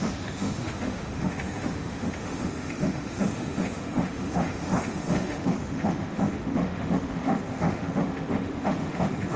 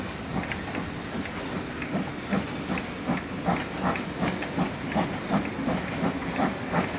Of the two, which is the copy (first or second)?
first